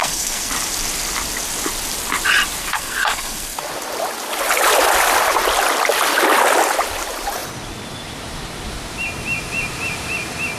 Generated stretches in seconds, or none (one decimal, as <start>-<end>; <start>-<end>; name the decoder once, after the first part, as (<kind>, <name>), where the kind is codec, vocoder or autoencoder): 0.0-0.5 (codec, SNAC); 2.6-3.7

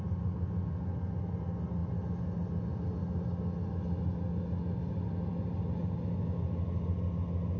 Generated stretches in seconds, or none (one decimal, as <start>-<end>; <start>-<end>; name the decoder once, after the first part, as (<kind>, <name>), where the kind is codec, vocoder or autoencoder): none

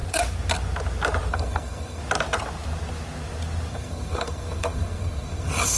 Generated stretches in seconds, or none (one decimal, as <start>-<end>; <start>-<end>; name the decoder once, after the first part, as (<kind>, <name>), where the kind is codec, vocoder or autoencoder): 1.3-2.0 (codec, SNAC); 3.7-5.8